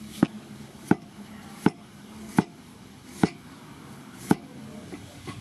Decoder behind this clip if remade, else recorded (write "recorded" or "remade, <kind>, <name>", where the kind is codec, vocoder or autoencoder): remade, codec, DAC